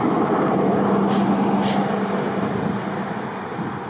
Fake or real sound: real